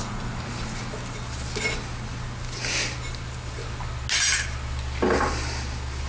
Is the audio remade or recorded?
recorded